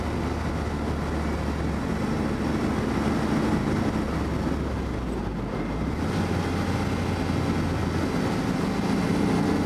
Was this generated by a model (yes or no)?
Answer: no